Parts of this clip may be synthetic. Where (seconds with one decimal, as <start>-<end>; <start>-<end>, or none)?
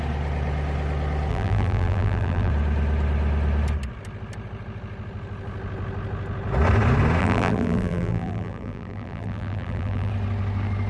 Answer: 1.3-2.5; 7.2-10.1